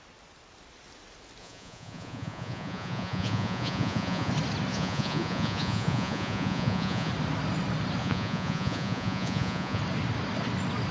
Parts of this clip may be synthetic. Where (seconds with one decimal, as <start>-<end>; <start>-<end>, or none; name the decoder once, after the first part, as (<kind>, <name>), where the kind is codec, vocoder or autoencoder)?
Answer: 1.4-4.3 (vocoder, Vocos); 4.7-7.1; 8.0-9.8